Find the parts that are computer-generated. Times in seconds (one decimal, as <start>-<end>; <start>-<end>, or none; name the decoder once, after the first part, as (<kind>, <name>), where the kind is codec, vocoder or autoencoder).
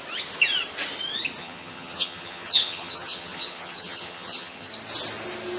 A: 1.4-4.7 (vocoder, HiFi-GAN)